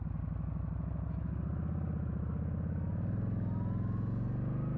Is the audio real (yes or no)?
yes